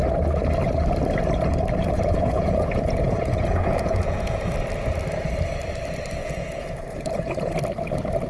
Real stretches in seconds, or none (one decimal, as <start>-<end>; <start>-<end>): 0.0-1.8; 4.5-6.2; 7.6-8.3